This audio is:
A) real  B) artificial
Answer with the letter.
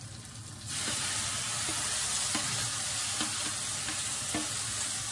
A